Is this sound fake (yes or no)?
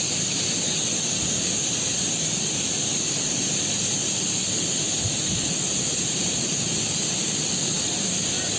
yes